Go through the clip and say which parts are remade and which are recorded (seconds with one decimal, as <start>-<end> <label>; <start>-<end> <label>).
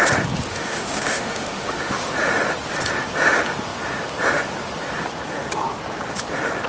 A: 0.0-0.5 recorded; 0.5-2.1 remade; 2.1-6.7 recorded